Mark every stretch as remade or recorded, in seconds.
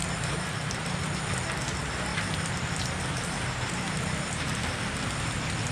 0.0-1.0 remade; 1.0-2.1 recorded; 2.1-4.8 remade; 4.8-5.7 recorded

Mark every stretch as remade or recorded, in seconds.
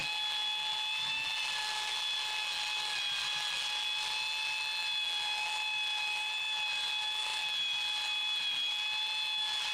0.0-9.7 recorded